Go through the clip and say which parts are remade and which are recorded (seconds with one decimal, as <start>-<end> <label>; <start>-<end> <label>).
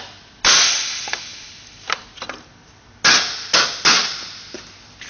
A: 0.0-5.1 recorded